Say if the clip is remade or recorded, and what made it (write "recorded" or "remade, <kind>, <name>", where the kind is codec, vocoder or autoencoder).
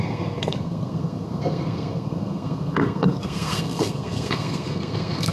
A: remade, codec, SNAC